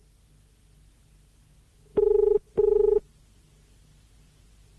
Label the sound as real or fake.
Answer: real